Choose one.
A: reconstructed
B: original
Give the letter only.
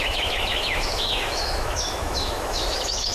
A